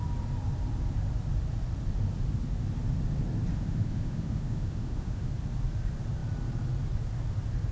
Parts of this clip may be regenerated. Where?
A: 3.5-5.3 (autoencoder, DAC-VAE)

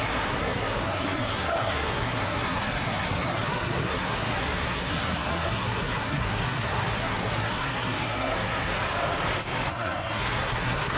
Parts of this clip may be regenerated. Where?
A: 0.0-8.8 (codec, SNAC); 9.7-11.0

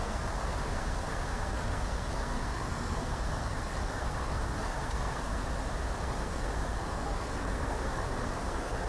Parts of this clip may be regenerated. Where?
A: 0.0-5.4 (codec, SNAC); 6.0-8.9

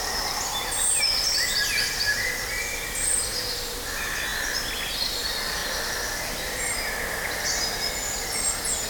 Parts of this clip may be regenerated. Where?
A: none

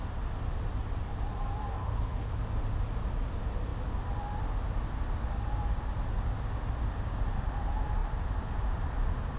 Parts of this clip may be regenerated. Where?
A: 1.8-2.4 (codec, HILCodec)